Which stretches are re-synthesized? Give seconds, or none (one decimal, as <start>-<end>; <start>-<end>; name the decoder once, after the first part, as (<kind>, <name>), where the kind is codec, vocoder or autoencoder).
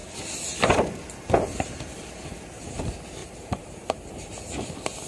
3.2-4.1 (vocoder, BigVGAN v2)